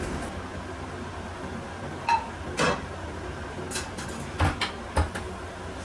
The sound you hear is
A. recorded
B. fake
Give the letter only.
A